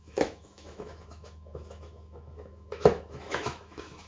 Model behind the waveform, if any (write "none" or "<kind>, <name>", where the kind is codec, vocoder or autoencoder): autoencoder, DAC-VAE